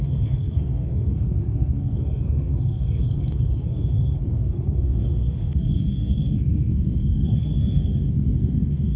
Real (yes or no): no